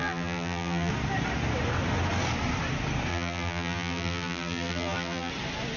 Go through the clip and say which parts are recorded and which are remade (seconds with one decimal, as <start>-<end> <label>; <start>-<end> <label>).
0.0-0.9 remade; 0.9-3.1 recorded; 3.1-5.3 remade; 5.3-5.8 recorded